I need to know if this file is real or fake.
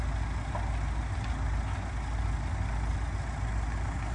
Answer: real